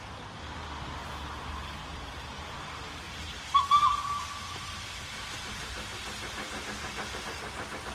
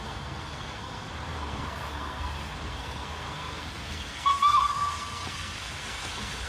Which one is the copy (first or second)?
second